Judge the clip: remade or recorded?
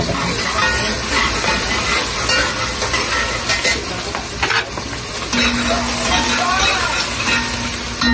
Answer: recorded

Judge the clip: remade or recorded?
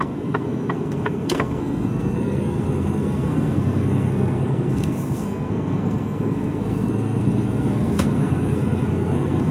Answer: remade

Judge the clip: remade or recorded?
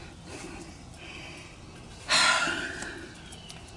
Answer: recorded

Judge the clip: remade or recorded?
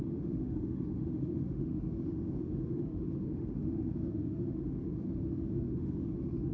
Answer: remade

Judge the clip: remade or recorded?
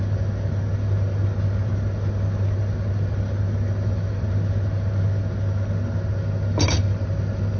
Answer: recorded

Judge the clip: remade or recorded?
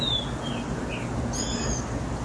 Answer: recorded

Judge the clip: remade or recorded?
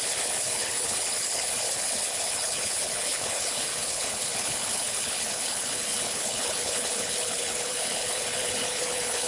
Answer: remade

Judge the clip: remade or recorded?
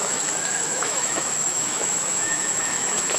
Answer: remade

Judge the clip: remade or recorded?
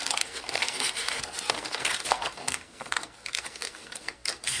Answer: remade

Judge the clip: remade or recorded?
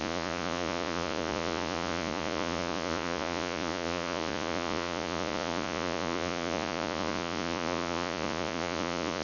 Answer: remade